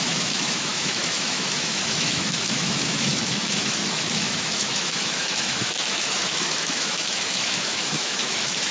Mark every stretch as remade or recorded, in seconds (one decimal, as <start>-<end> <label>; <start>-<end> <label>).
0.0-8.7 remade